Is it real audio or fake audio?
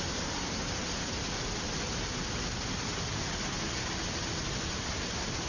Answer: real